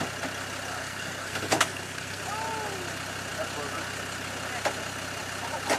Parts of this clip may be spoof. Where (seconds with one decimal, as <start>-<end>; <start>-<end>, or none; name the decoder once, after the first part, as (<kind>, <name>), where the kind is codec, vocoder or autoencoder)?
0.8-2.2 (codec, SNAC)